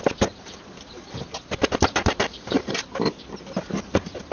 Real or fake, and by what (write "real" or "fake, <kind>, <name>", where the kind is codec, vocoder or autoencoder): real